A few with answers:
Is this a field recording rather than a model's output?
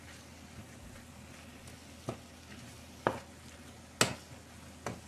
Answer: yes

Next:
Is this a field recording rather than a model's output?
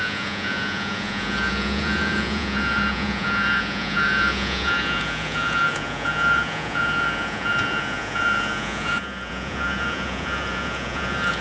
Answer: no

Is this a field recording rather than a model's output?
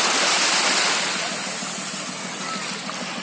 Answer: yes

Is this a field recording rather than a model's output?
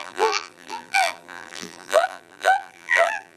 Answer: no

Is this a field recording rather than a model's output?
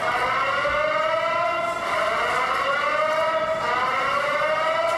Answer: yes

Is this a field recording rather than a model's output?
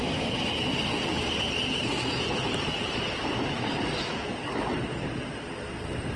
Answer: yes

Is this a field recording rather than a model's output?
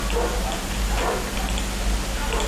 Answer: yes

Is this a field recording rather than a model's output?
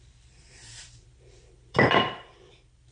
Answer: no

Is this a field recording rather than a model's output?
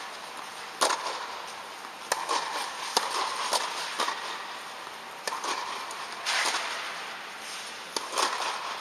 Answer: yes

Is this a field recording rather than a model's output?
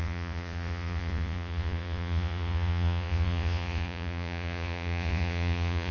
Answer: no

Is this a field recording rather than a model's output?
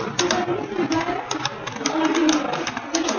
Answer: yes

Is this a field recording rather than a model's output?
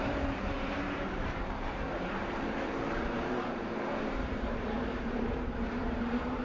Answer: no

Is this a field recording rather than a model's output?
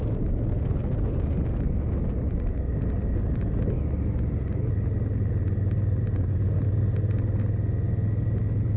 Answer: yes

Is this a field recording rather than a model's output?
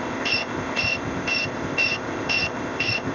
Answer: no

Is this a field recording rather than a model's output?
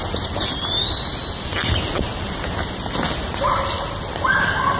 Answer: yes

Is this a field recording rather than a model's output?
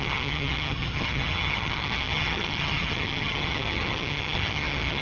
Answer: no